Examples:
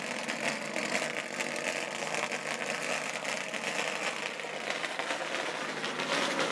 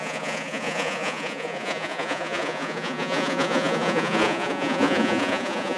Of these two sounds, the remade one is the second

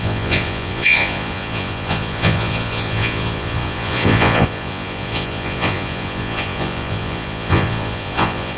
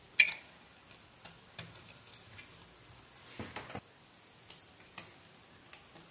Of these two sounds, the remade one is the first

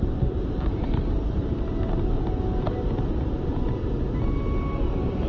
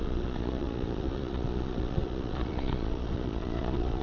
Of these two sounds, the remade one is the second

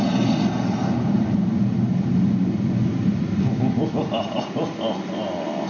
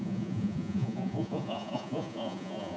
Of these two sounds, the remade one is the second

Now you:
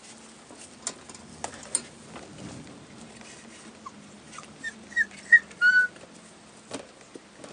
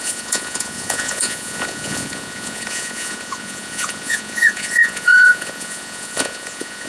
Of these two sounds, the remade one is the second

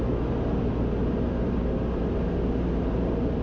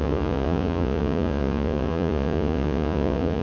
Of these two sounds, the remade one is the second